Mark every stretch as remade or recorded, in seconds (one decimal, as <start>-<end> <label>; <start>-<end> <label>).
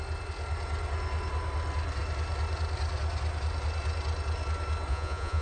0.0-4.9 recorded; 4.9-5.4 remade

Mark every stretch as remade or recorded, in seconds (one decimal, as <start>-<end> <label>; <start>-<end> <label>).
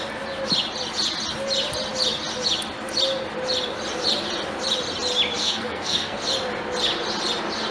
0.0-5.4 recorded; 5.4-6.2 remade; 6.2-7.7 recorded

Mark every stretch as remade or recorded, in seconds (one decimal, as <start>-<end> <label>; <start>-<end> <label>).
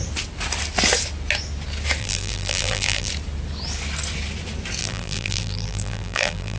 0.0-2.0 recorded; 2.0-3.1 remade; 3.1-4.8 recorded; 4.8-6.6 remade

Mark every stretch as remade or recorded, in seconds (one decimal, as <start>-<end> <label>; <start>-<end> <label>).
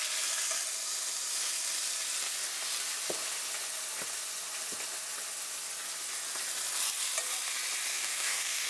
0.0-7.9 recorded; 7.9-8.7 remade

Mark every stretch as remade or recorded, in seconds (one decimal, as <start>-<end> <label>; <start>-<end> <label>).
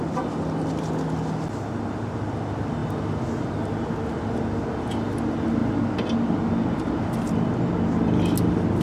0.0-8.8 recorded